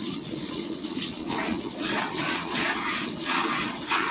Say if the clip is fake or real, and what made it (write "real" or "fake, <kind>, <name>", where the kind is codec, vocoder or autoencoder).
fake, vocoder, Vocos